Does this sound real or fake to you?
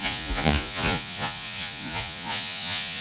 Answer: fake